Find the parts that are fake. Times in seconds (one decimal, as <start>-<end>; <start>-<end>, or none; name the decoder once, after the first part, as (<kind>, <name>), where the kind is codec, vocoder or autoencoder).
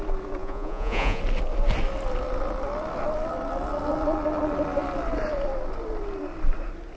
0.4-1.2 (vocoder, Vocos)